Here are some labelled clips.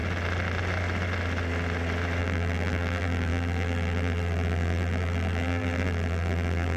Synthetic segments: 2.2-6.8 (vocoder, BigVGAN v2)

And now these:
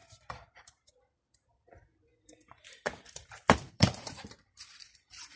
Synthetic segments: 0.0-5.4 (vocoder, BigVGAN v2)